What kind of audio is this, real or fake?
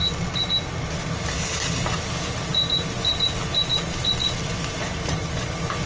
real